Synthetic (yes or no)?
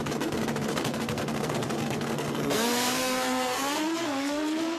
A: yes